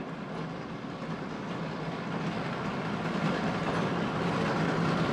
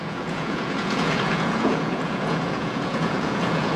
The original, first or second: first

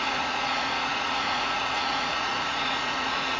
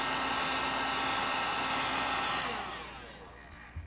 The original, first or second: second